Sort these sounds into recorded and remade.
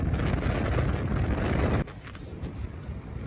recorded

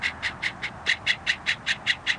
recorded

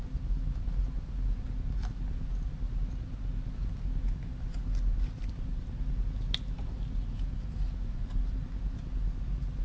recorded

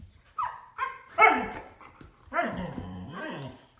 remade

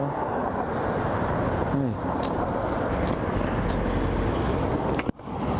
recorded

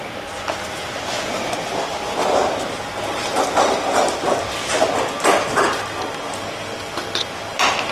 recorded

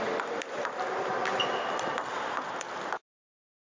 recorded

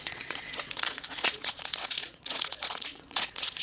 remade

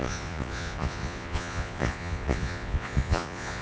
remade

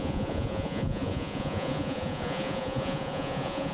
remade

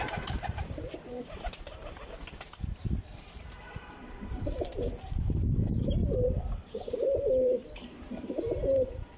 remade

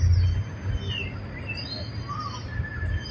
recorded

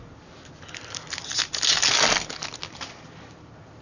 recorded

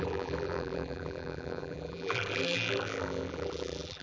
remade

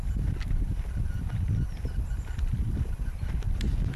recorded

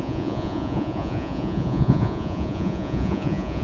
remade